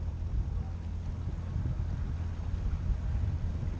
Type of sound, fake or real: real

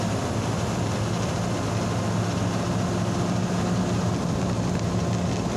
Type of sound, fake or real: real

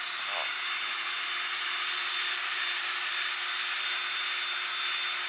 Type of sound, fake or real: real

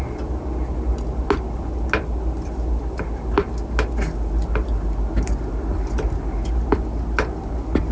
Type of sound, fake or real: real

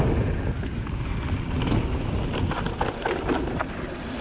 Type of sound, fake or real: real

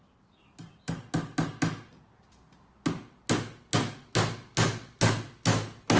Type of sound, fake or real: real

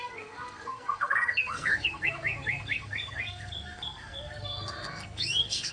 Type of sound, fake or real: fake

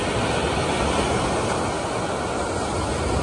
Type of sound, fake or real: real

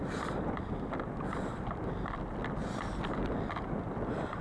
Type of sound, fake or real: real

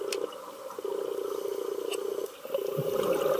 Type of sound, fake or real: real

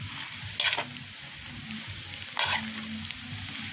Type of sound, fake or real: real